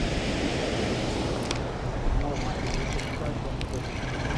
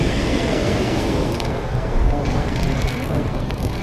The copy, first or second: second